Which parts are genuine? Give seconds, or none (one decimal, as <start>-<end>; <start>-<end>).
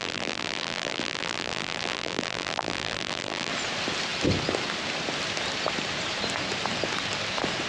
3.5-7.7